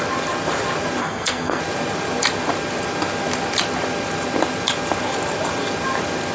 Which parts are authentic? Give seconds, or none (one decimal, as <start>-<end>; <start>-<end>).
0.0-1.0; 1.6-6.3